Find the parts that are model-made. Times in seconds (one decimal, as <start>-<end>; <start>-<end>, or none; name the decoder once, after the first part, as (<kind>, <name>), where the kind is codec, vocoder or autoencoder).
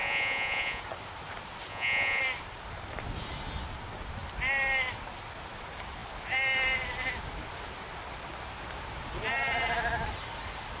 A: 0.0-0.8 (vocoder, Vocos); 1.7-2.2